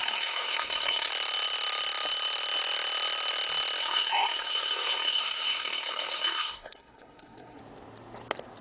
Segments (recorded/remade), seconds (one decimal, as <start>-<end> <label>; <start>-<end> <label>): 0.0-1.1 remade; 1.1-3.8 recorded; 3.8-7.6 remade; 7.6-8.6 recorded